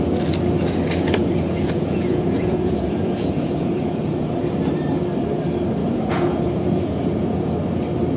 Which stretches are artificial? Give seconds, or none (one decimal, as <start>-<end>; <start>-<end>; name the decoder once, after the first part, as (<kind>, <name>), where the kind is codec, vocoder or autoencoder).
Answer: 1.2-4.4 (vocoder, Vocos); 5.8-7.5